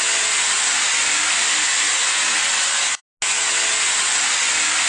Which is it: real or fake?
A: real